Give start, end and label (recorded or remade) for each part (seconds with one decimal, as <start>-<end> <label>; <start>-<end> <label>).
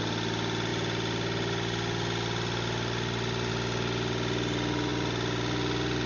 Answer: 0.0-6.1 recorded